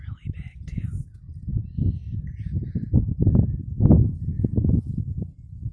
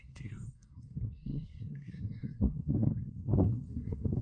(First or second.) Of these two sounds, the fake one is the second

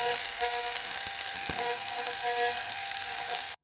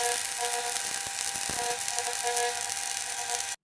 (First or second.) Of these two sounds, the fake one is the first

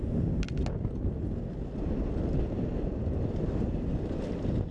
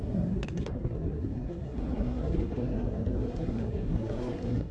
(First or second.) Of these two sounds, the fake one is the second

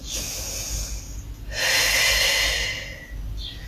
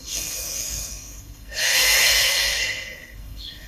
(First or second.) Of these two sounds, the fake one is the second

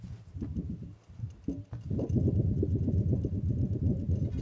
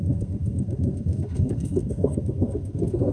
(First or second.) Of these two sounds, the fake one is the second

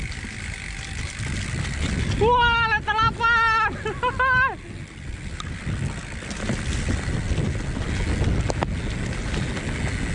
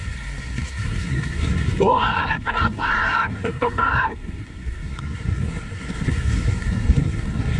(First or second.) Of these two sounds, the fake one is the second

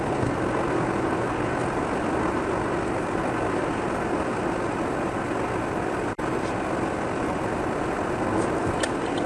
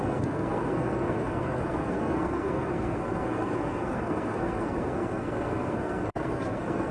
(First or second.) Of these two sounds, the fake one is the second